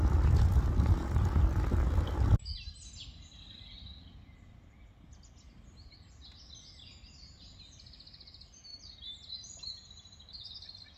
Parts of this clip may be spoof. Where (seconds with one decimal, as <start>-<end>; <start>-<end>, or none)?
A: 8.7-9.9